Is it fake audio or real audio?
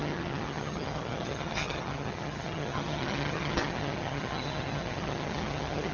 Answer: fake